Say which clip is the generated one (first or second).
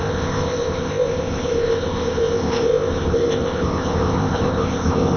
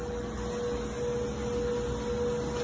first